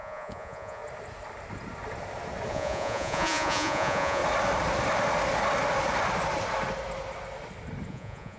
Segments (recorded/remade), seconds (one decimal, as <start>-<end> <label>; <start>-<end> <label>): 0.0-0.8 remade; 0.8-2.5 recorded; 2.5-4.2 remade; 4.2-7.9 recorded; 7.9-8.4 remade